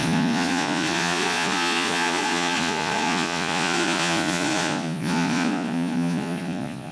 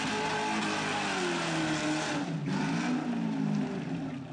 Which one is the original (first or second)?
second